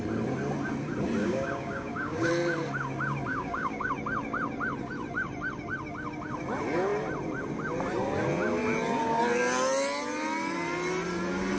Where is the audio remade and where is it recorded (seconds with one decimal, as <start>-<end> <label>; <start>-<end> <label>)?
0.0-1.2 recorded; 1.2-2.3 remade; 2.3-3.3 recorded; 3.3-3.9 remade; 3.9-11.6 recorded